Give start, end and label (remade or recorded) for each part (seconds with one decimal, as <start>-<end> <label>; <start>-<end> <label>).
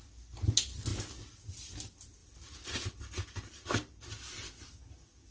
0.0-5.3 recorded